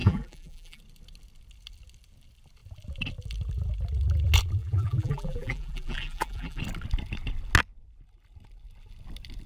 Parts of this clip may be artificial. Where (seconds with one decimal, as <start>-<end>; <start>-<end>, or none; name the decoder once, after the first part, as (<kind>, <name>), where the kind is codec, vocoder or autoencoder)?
0.0-0.8 (vocoder, BigVGAN v2); 4.6-6.6